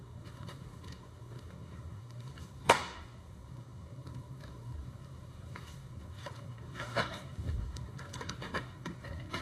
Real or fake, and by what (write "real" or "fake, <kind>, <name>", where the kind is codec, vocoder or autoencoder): fake, codec, SNAC